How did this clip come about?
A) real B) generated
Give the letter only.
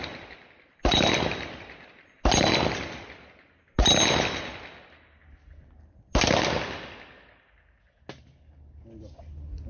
A